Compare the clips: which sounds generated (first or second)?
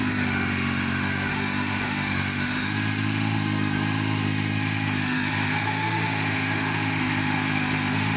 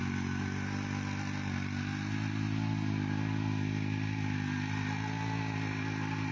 first